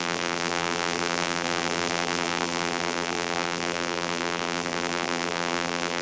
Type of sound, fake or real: fake